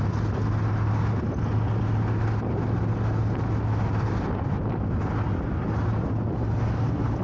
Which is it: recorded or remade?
recorded